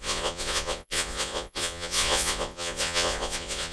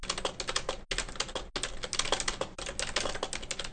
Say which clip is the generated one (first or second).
first